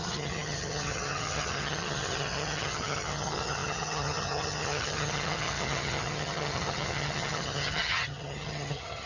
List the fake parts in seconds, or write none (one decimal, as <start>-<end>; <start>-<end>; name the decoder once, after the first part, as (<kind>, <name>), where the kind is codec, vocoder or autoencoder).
0.0-9.1 (vocoder, HiFi-GAN)